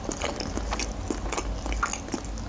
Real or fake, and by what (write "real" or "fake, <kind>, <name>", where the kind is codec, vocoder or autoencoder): real